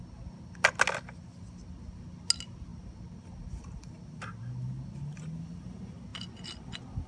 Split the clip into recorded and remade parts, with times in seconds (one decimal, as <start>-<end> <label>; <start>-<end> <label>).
0.0-7.1 recorded

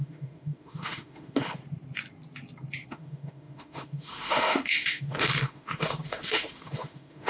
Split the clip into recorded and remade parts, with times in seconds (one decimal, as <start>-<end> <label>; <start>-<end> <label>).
0.0-1.6 remade; 1.6-2.9 recorded; 2.9-7.3 remade

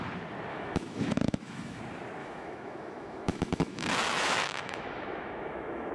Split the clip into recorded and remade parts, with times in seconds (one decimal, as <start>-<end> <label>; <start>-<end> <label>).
0.0-0.5 recorded; 0.5-1.8 remade; 1.8-2.2 recorded; 2.2-5.9 remade

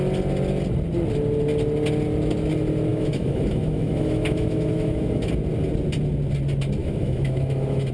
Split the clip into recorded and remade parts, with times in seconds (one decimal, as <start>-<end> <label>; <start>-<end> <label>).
0.0-2.9 recorded; 2.9-5.3 remade; 5.3-6.8 recorded; 6.8-7.9 remade

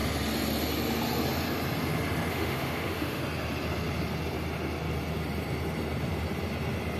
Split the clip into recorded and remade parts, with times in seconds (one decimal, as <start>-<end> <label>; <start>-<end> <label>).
0.0-2.3 recorded; 2.3-3.2 remade; 3.2-7.0 recorded

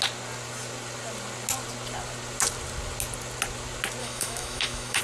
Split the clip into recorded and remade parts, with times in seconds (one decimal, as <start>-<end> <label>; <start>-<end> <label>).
0.0-4.0 recorded; 4.0-5.0 remade

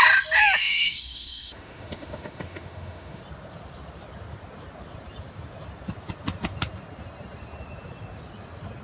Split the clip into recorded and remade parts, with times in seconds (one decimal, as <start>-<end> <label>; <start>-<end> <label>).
0.0-0.6 recorded; 0.6-3.2 remade; 3.2-8.8 recorded

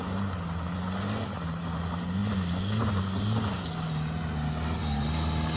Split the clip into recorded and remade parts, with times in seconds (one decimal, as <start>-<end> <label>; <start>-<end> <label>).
0.0-5.6 recorded